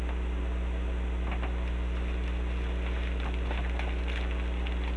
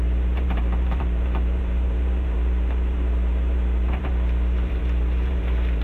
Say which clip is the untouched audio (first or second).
first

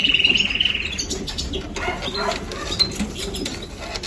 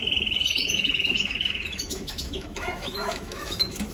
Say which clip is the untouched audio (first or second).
first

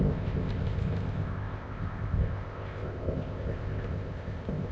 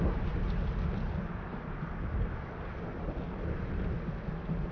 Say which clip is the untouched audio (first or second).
second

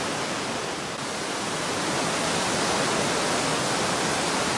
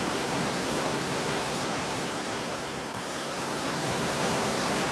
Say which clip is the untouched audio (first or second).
first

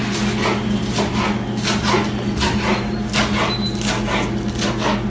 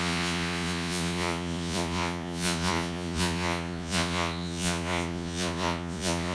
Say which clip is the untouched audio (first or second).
first